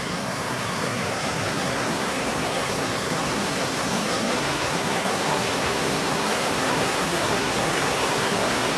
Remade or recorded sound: remade